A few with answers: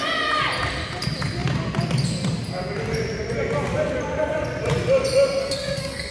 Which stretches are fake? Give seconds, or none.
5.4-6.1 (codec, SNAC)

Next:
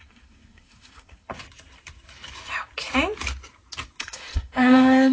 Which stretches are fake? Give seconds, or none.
0.0-1.3 (codec, SNAC); 4.0-5.1

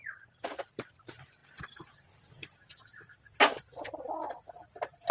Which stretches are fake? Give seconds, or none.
none